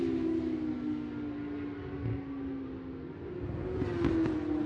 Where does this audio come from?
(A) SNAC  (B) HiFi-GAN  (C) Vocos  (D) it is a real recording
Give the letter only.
D